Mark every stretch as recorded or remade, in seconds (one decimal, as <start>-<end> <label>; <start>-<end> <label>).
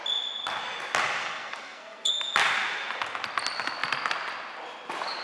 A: 0.0-1.2 recorded; 1.2-2.1 remade; 2.1-5.2 recorded